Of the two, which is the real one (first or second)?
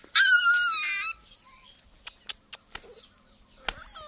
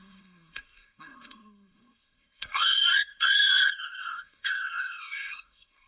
first